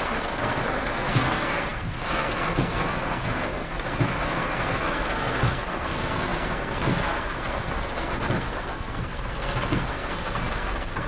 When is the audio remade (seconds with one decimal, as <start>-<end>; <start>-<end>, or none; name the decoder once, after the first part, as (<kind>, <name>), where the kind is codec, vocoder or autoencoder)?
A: 0.0-11.1 (codec, SNAC)